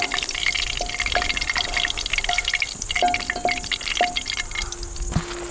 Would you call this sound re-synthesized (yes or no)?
no